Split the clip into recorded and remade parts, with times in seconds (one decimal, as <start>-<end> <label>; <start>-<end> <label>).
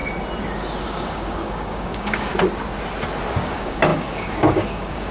0.0-0.8 recorded; 0.8-2.3 remade; 2.3-3.3 recorded; 3.3-5.1 remade